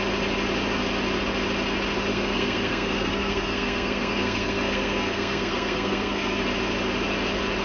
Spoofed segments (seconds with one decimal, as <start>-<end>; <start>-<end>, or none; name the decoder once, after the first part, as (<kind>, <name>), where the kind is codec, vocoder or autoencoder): 2.1-6.4 (codec, SNAC)

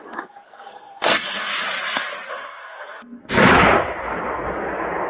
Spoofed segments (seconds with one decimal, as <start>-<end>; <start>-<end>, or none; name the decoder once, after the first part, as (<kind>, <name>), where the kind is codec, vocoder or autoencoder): 0.0-1.5 (codec, SNAC); 2.3-3.2

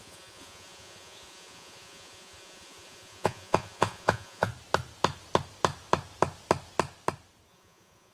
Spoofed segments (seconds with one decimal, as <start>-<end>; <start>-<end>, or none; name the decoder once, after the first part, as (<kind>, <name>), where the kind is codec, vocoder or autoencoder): 0.0-4.5 (vocoder, Vocos); 7.5-8.1